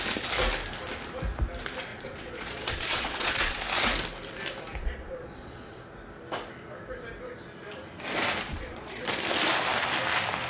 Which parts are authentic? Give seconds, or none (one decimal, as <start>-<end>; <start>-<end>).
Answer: 0.0-1.9; 3.6-4.8; 5.8-8.5; 9.2-10.5